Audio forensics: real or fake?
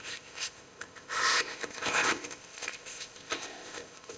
fake